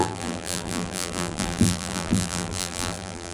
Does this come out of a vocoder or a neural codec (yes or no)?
yes